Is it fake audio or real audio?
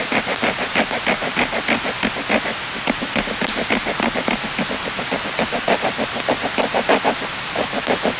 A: real